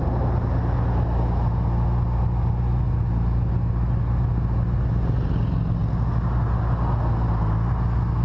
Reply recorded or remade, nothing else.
recorded